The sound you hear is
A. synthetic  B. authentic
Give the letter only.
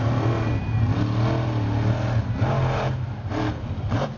B